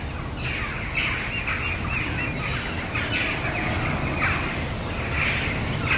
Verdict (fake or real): real